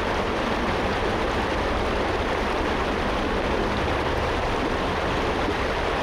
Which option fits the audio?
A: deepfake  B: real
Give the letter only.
B